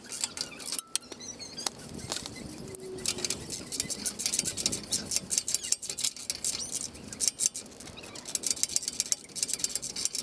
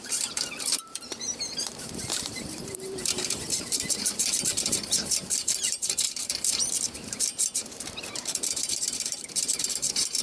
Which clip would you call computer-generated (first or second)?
second